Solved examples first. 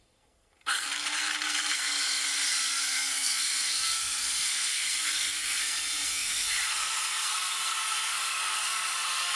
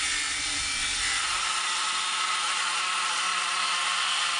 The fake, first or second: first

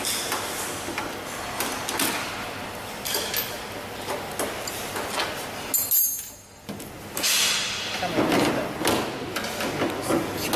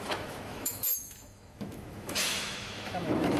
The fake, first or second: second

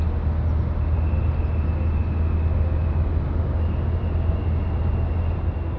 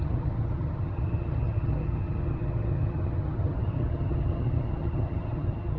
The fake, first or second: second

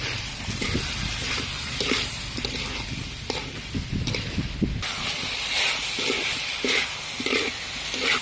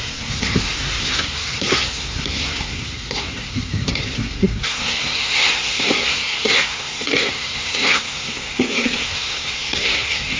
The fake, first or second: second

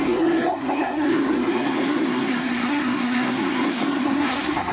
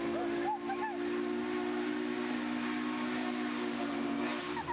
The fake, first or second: first